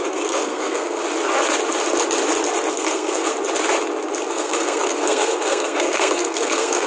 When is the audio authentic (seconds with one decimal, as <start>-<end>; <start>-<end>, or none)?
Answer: 1.0-2.7; 3.3-4.3